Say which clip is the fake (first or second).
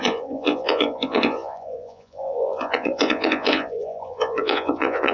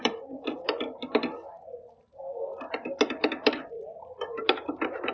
first